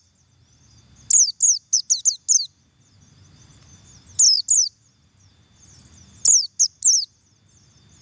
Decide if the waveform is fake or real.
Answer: real